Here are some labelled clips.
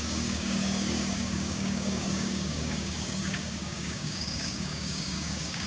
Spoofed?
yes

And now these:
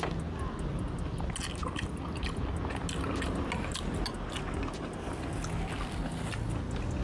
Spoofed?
no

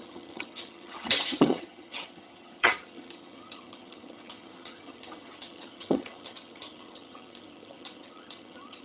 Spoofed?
yes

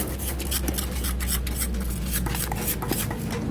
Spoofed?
no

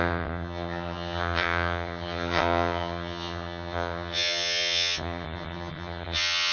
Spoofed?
yes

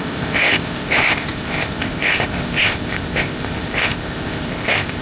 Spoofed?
yes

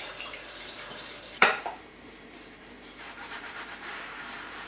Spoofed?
yes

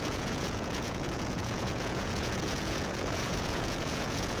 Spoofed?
yes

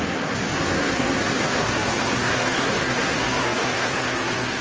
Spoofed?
yes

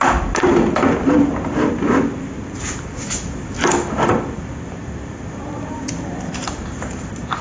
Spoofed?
no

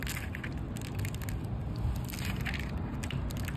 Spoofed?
no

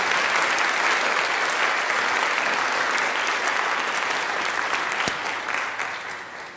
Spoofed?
no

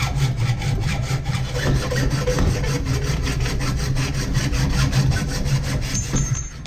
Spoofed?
no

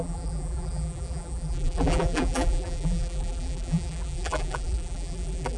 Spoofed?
yes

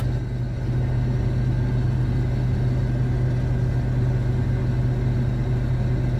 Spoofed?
no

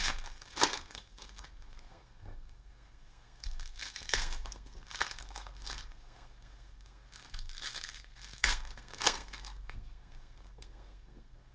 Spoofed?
yes